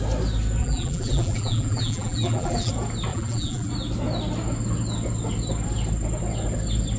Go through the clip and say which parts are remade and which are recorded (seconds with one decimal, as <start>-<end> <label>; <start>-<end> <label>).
0.0-0.6 recorded; 0.6-2.7 remade; 2.7-3.1 recorded; 3.1-3.7 remade; 3.7-7.0 recorded